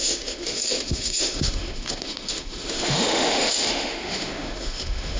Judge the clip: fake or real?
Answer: fake